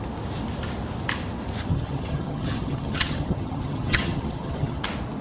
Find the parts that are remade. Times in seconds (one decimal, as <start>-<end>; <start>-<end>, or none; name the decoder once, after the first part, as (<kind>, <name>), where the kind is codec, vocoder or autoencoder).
1.7-4.8 (vocoder, HiFi-GAN)